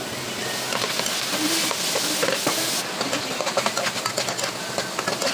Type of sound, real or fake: real